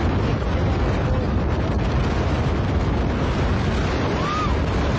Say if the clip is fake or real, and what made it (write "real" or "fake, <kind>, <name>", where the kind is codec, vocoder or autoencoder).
real